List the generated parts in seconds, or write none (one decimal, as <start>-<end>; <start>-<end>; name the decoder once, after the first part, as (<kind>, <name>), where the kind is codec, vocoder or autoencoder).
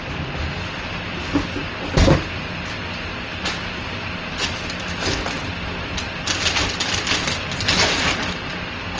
none